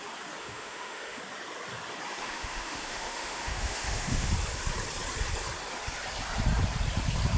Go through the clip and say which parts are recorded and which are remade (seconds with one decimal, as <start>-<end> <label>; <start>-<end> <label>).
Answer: 0.0-0.4 recorded; 0.4-1.2 remade; 1.2-2.2 recorded; 2.2-4.3 remade; 4.3-7.4 recorded